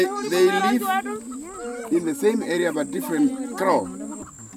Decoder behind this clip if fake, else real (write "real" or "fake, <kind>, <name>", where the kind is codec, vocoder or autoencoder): real